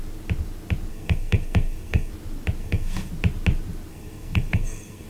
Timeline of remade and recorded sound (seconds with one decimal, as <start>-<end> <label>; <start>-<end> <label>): 0.0-0.9 recorded; 0.9-2.1 remade; 2.1-2.6 recorded; 2.6-3.1 remade; 3.1-3.9 recorded; 3.9-5.1 remade